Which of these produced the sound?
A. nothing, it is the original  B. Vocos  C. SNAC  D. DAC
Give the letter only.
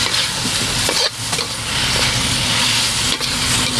A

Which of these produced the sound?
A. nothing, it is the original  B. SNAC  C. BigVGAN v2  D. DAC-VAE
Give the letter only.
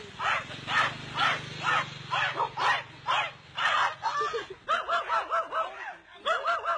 A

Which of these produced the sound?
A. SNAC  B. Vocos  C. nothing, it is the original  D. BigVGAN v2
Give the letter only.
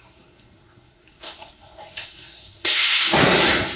A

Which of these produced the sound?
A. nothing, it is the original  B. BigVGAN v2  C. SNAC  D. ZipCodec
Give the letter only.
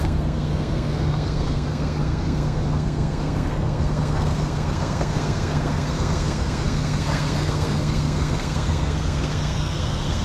C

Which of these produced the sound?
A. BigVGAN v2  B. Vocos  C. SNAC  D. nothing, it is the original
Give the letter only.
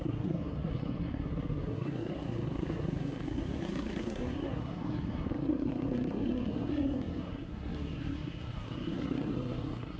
C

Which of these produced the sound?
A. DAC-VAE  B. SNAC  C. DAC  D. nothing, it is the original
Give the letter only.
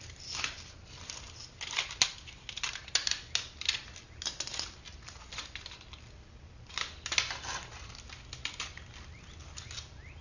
D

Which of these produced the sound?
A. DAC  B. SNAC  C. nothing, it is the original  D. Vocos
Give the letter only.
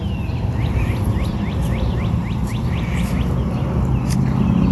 C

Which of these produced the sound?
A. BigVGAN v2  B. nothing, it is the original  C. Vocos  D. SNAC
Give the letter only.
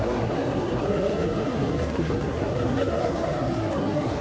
D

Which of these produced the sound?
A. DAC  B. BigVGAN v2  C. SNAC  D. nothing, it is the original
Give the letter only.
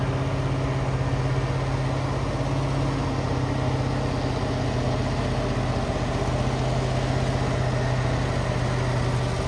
D